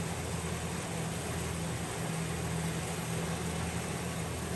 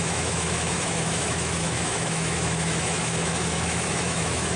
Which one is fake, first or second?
second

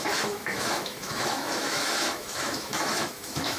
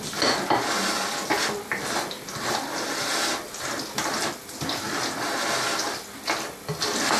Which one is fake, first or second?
first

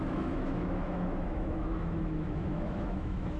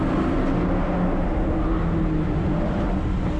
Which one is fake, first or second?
first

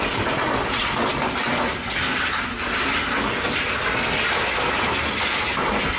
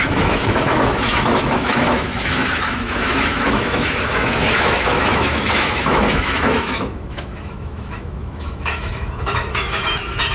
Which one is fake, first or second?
second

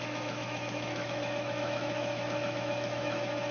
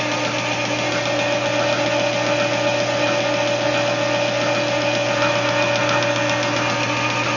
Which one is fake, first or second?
first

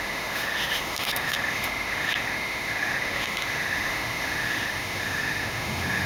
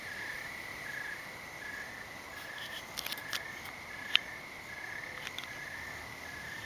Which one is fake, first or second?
first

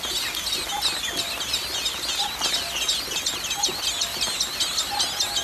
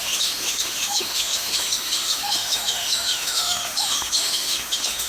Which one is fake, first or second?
second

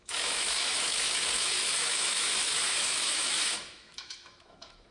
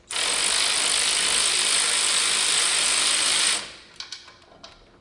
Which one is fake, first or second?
first